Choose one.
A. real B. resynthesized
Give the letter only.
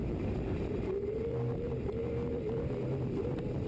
B